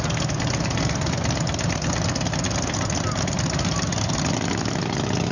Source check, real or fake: real